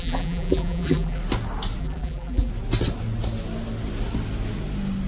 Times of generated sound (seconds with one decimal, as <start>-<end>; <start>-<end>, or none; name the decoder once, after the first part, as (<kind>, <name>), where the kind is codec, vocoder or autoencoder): 0.0-1.2 (vocoder, BigVGAN v2); 1.8-2.5